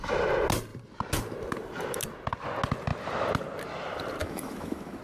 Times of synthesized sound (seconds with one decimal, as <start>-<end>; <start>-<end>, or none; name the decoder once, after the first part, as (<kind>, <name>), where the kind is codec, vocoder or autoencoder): 4.2-5.0 (autoencoder, DAC-VAE)